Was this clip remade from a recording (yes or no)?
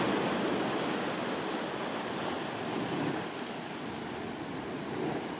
no